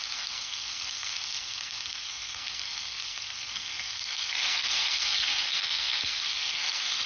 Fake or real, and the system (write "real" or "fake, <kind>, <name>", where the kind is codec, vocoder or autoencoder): fake, codec, SNAC